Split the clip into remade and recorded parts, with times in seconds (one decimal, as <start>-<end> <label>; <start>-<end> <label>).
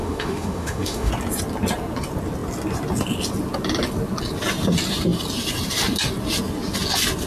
0.0-1.1 remade; 1.1-7.3 recorded